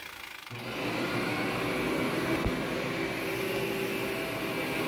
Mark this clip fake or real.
real